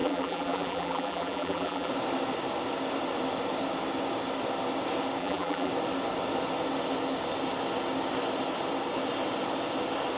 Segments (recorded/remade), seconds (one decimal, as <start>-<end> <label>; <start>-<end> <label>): 0.0-1.9 remade; 1.9-5.2 recorded; 5.2-5.7 remade; 5.7-10.2 recorded